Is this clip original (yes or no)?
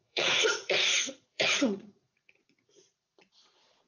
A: no